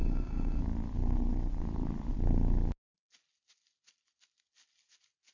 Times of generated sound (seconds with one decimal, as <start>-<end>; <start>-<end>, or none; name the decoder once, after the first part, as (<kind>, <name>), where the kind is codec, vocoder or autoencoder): 0.0-0.6 (codec, SNAC)